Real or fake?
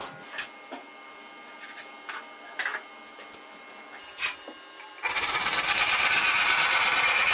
real